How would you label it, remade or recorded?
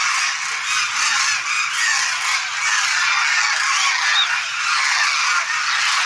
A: recorded